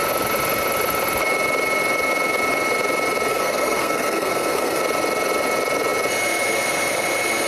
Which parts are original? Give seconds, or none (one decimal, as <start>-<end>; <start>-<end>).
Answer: 0.0-3.3; 4.8-7.5